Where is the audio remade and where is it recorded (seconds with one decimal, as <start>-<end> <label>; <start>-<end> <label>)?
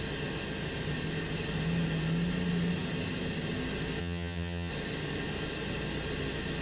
0.0-4.0 recorded; 4.0-4.7 remade; 4.7-6.6 recorded